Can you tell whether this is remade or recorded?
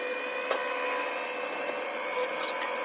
recorded